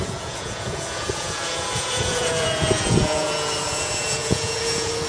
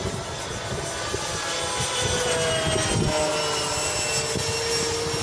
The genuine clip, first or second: second